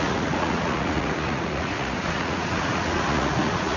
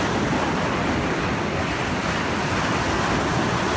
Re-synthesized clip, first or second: first